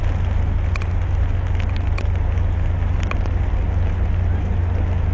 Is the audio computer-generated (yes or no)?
no